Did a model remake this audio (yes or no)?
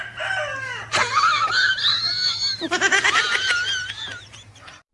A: no